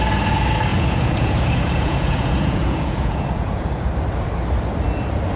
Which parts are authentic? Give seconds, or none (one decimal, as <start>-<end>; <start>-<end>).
0.0-0.7; 3.9-5.4